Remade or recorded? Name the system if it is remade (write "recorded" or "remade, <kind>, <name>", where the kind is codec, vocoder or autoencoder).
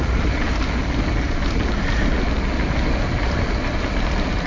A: recorded